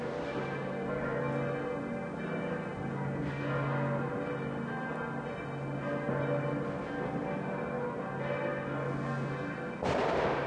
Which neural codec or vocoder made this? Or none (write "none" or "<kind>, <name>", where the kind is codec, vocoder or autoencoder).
none